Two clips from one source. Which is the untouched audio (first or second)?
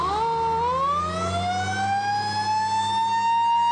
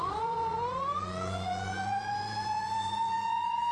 first